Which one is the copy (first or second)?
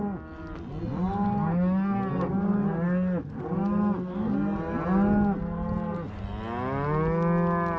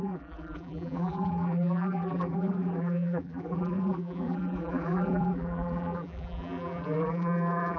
second